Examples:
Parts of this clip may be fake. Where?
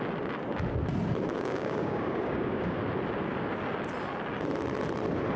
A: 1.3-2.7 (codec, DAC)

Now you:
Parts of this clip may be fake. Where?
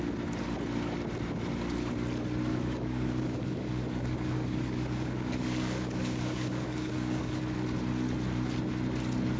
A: 2.5-7.4 (codec, DAC)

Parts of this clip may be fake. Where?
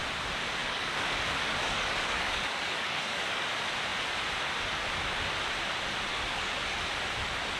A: 0.6-3.5 (codec, DAC); 6.1-6.8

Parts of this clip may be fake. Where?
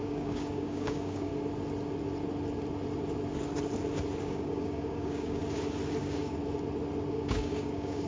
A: 0.0-1.3 (codec, DAC); 4.2-5.4; 6.0-6.4; 7.1-8.1